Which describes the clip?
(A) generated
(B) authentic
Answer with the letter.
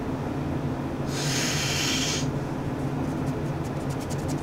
B